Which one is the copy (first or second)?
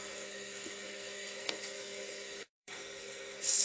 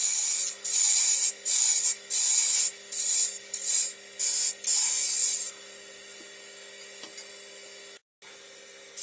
first